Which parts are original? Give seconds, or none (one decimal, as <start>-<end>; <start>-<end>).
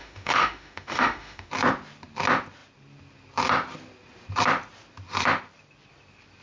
1.5-6.4